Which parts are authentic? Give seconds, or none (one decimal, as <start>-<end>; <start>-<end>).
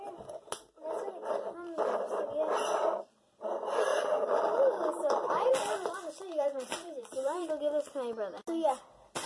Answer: 0.0-3.9; 7.5-9.3